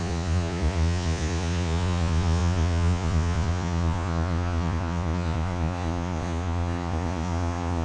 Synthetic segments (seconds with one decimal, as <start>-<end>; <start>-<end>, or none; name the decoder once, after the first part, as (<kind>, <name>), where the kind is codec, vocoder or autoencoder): 0.0-7.8 (vocoder, Vocos)